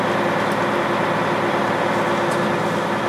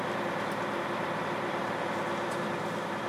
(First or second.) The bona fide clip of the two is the first